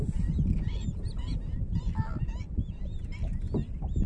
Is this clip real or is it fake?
real